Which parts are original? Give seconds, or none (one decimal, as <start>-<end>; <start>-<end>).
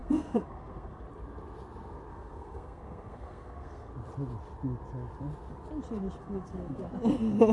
1.0-2.1; 3.9-6.2; 6.8-7.5